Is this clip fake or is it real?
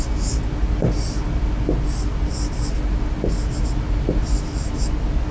real